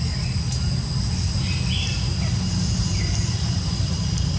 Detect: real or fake real